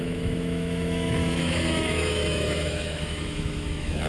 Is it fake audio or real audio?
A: fake